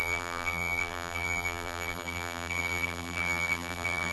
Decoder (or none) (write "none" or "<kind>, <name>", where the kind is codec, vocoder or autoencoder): vocoder, BigVGAN v2